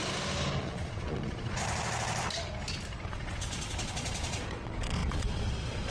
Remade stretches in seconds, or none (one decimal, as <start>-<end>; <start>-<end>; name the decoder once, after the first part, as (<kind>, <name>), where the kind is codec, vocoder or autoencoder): 0.6-1.6 (vocoder, Vocos); 3.1-5.9